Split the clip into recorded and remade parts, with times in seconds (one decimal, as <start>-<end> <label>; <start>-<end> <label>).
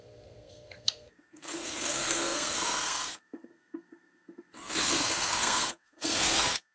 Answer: 0.0-6.7 remade